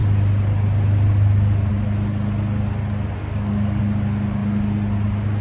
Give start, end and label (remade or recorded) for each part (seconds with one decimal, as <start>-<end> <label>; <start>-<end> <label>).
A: 0.0-3.2 recorded; 3.2-3.8 remade; 3.8-5.4 recorded